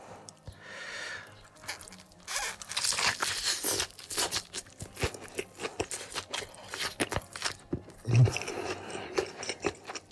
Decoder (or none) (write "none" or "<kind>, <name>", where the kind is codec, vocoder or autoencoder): none